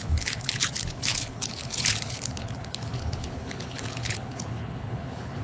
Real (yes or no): no